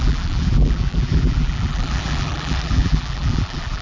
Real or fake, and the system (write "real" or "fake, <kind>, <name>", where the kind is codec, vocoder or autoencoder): fake, vocoder, BigVGAN v2